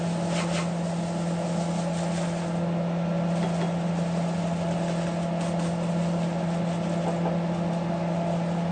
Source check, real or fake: real